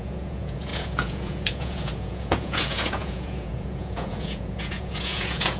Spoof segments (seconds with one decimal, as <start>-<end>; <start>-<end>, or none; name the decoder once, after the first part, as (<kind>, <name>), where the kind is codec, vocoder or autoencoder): 0.0-5.6 (vocoder, Vocos)